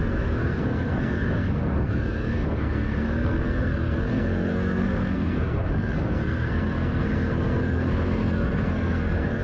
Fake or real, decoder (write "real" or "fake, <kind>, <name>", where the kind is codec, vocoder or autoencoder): fake, codec, SNAC